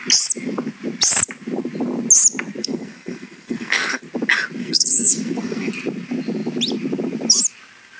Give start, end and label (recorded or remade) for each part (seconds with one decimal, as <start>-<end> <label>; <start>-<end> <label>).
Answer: 0.0-2.6 recorded; 2.6-4.0 remade; 4.0-4.6 recorded; 4.6-5.7 remade; 5.7-8.0 recorded